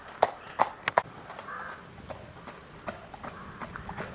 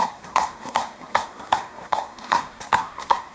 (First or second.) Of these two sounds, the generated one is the second